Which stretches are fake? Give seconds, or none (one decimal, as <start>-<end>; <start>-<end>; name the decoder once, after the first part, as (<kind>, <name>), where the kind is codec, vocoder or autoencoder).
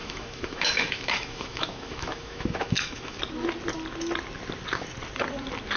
0.0-3.2 (autoencoder, DAC-VAE)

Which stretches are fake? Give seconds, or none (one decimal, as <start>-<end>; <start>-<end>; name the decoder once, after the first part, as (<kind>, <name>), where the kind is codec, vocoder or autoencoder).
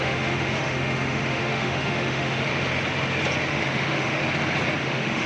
0.0-2.5 (autoencoder, DAC-VAE); 3.5-4.2; 4.8-5.3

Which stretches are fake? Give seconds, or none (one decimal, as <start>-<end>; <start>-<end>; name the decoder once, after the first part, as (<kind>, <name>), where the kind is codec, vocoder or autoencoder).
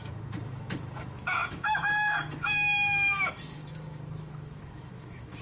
0.0-5.4 (autoencoder, DAC-VAE)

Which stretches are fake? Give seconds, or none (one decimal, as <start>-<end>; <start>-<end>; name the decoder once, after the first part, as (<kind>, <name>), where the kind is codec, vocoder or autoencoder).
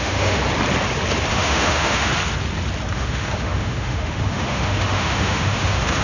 0.0-0.4 (autoencoder, DAC-VAE); 1.3-2.1; 2.9-6.0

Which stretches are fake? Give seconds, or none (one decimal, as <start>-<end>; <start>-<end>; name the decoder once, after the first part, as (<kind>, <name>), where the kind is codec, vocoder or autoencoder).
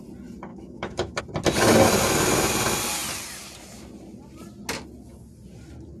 0.5-1.2 (autoencoder, DAC-VAE)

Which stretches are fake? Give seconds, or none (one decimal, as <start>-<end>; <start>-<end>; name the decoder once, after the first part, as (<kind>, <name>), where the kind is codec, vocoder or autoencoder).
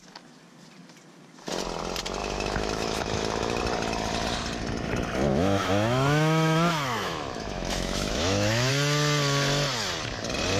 2.2-3.6 (autoencoder, DAC-VAE); 5.3-8.7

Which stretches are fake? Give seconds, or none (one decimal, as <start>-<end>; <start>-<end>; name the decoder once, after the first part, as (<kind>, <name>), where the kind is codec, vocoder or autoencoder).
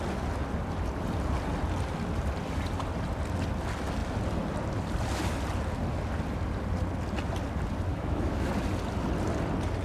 7.9-8.5 (autoencoder, DAC-VAE)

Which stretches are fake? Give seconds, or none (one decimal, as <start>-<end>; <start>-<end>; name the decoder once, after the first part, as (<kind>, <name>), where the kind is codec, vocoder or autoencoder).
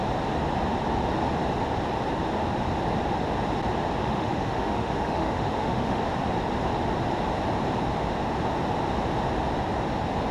4.0-6.0 (autoencoder, DAC-VAE)